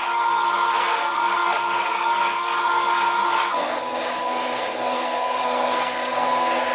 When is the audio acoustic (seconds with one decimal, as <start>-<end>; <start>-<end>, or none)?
none